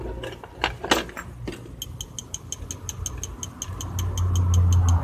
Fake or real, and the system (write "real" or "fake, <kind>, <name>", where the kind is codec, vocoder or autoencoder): real